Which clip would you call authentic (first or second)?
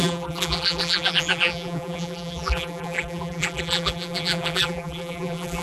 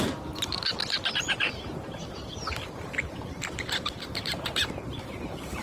second